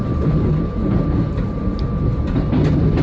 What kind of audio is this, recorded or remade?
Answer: recorded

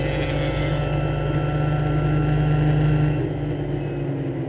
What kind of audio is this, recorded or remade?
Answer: recorded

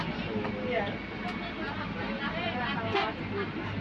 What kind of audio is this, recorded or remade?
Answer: recorded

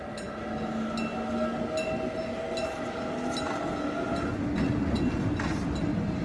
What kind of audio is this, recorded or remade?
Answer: recorded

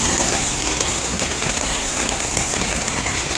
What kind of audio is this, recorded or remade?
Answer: remade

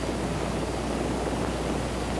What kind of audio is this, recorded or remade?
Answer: recorded